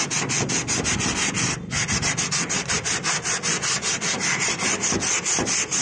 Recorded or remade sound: recorded